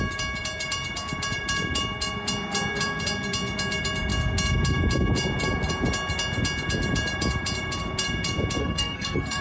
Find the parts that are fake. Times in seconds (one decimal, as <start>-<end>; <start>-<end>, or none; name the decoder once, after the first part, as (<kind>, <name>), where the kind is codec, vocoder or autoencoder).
8.6-9.4 (codec, SNAC)